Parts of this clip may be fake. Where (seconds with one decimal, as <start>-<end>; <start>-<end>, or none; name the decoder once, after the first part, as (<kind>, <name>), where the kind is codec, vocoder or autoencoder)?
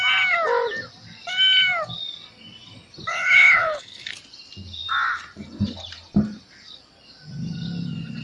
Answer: 3.1-4.1 (codec, HILCodec)